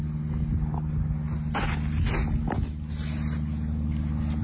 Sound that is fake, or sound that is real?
real